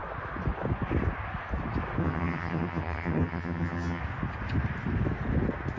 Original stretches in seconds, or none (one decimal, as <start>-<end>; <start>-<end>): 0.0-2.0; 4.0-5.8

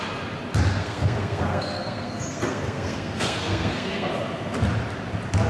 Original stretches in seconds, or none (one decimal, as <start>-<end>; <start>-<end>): 0.0-0.8; 4.1-5.5

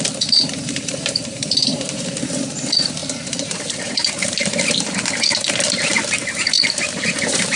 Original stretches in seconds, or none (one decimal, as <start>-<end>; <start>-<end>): none

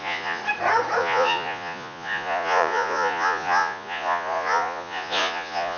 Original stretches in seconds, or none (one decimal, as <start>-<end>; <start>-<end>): 0.4-1.0

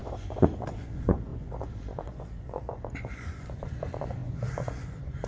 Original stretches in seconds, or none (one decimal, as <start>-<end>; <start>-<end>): none

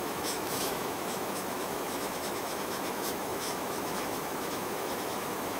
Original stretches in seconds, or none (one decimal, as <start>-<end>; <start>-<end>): none

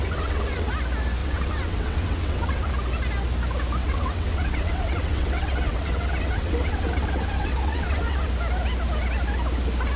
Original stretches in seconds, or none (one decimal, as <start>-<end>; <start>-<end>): 0.7-1.2; 2.7-3.8; 8.3-10.0

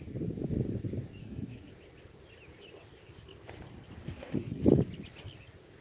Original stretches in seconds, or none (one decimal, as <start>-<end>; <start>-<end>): 0.0-1.2; 1.7-4.0; 4.6-5.8